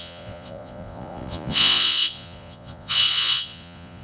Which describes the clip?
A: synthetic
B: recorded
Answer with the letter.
A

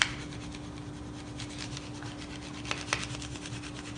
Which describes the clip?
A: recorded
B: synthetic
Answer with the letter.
A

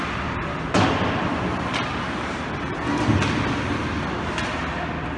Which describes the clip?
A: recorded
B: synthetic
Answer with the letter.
A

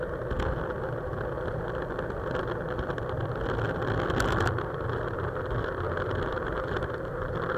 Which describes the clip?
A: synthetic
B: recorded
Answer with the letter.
B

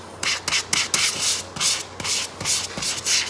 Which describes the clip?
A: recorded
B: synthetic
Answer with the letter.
A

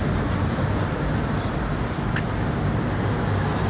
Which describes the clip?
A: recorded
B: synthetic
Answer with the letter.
A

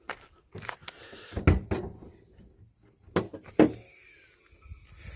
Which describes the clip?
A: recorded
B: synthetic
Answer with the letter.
A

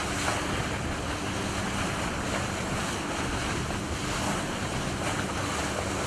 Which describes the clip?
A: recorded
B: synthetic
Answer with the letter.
A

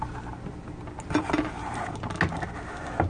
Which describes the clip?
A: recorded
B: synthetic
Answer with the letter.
A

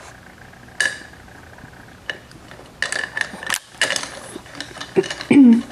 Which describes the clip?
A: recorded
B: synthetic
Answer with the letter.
A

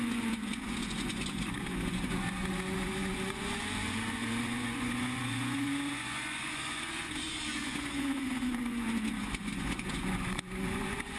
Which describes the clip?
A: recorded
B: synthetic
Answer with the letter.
B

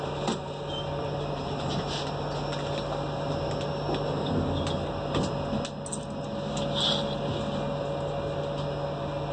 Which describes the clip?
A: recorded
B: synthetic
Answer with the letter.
A